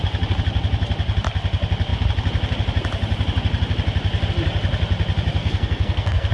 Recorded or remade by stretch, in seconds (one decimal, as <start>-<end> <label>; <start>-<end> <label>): 0.0-5.4 recorded; 5.4-6.3 remade